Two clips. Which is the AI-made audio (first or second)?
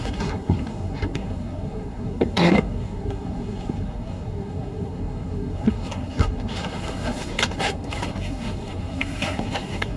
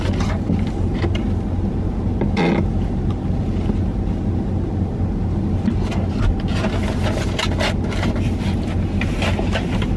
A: first